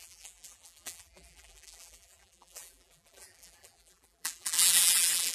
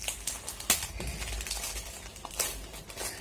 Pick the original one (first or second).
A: second